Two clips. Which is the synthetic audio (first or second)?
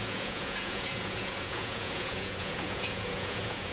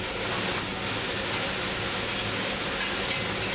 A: first